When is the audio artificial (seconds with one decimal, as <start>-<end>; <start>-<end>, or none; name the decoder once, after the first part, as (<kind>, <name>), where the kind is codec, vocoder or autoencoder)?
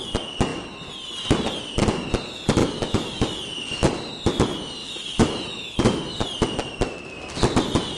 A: 2.6-3.4 (autoencoder, DAC-VAE); 4.8-6.0